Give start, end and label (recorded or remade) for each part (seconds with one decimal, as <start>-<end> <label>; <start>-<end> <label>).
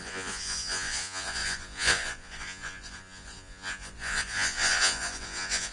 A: 0.0-5.7 remade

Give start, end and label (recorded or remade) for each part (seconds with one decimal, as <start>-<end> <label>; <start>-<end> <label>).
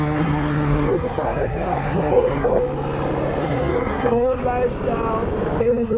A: 0.0-2.6 remade; 2.6-3.4 recorded; 3.4-4.4 remade; 4.4-5.6 recorded; 5.6-6.0 remade